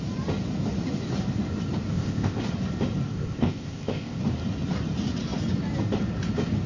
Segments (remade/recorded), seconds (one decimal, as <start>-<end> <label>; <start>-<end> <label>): 0.0-1.9 recorded; 1.9-2.4 remade; 2.4-3.1 recorded; 3.1-4.2 remade; 4.2-6.7 recorded